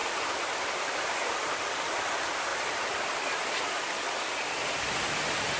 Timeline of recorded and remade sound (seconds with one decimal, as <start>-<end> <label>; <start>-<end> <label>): 0.0-5.6 recorded